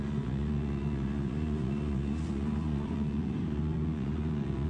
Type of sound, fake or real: fake